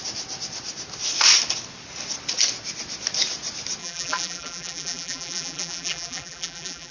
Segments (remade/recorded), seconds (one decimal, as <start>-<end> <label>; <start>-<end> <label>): 0.0-3.8 recorded; 3.8-6.9 remade